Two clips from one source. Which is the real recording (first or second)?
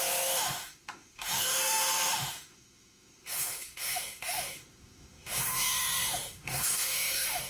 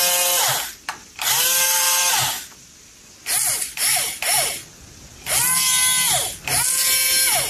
second